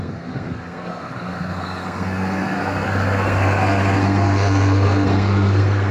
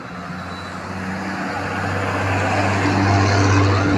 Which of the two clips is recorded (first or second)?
second